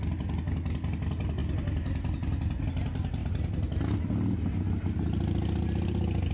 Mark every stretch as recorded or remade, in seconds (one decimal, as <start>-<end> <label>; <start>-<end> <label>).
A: 0.0-6.3 recorded